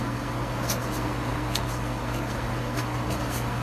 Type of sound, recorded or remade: remade